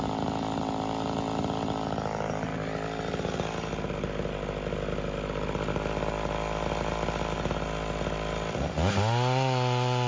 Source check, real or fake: real